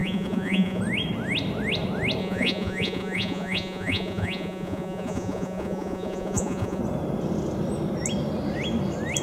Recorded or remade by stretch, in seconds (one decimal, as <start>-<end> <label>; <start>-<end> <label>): 0.0-0.8 remade; 0.8-2.2 recorded; 2.2-6.8 remade; 6.8-9.2 recorded